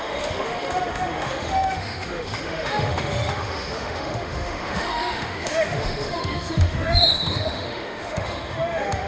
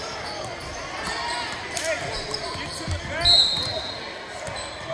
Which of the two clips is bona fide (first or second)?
second